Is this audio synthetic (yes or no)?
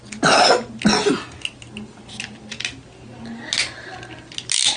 no